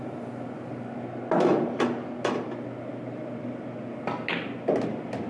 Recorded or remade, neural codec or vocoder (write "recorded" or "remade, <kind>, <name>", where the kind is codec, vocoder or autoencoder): recorded